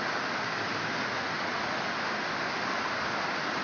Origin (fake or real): real